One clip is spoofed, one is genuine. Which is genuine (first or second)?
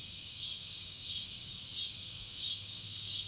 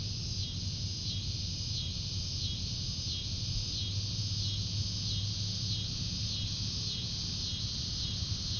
second